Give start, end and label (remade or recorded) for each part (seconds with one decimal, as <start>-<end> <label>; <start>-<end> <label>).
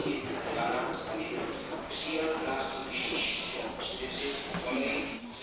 0.0-1.6 recorded; 1.6-2.2 remade; 2.2-5.4 recorded